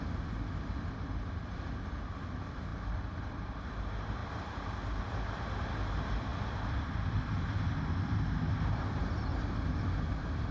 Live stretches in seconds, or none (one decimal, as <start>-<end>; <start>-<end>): 0.0-2.7; 3.7-6.3; 7.4-9.3